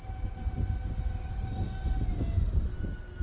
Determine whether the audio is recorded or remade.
recorded